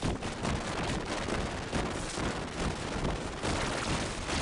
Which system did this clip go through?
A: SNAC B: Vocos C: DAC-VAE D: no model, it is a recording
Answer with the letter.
D